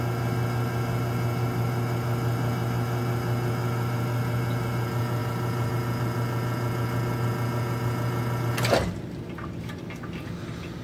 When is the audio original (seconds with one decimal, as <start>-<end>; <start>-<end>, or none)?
0.0-5.2; 5.7-10.8